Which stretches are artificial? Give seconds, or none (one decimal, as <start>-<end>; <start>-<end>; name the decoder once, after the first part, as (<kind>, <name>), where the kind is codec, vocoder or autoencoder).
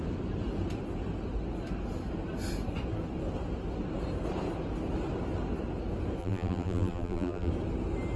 6.2-7.5 (vocoder, BigVGAN v2)